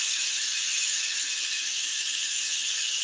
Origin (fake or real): fake